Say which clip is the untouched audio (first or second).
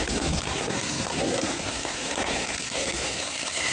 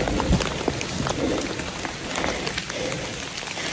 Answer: second